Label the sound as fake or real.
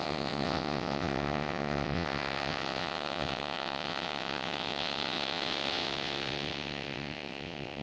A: fake